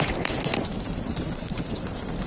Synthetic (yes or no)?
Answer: yes